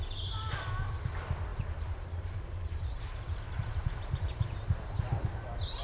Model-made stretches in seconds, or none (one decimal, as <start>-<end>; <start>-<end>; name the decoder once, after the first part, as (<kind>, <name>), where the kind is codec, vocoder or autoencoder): 1.5-5.0 (vocoder, BigVGAN v2)